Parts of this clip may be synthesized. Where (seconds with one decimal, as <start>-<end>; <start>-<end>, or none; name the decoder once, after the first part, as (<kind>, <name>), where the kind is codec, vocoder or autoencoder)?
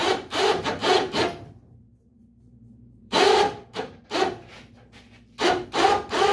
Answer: 0.0-0.8 (vocoder, BigVGAN v2); 2.0-4.0